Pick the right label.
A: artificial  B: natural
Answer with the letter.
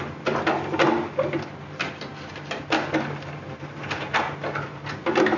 B